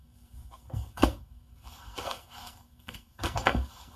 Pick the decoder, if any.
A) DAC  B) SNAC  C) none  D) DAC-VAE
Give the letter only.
B